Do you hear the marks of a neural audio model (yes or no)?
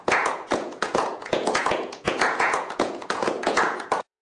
yes